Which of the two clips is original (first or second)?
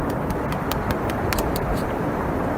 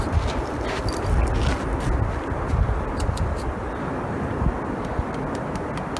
second